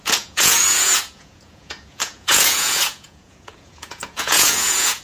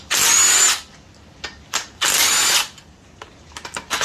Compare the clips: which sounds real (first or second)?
second